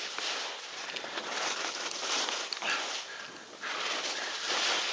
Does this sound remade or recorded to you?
recorded